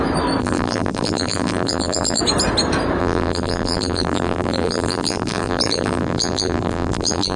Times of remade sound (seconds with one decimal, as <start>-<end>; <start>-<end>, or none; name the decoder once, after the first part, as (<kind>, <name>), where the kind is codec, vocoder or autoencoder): 0.4-2.2 (vocoder, BigVGAN v2); 3.0-7.4